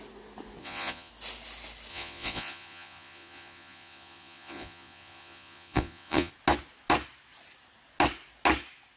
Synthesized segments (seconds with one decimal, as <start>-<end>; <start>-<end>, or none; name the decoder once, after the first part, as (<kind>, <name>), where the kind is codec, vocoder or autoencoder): 0.6-1.1 (vocoder, Vocos); 1.9-6.3